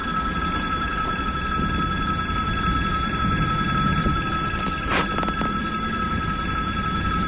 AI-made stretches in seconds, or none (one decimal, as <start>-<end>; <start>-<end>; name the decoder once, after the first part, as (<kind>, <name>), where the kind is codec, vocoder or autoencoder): 0.0-1.3 (vocoder, BigVGAN v2); 2.4-3.5; 4.0-7.3